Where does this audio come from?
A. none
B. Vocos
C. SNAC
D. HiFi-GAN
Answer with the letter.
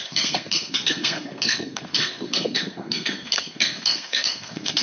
C